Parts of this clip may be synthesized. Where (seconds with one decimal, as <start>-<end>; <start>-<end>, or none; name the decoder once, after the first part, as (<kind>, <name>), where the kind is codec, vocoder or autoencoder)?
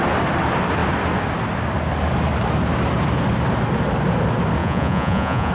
4.6-5.5 (vocoder, Vocos)